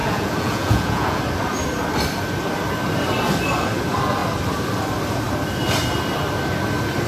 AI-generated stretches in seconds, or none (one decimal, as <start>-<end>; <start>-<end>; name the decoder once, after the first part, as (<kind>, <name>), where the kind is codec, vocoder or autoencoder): 0.0-1.2 (vocoder, Vocos)